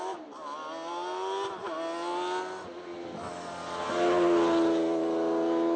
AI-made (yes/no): no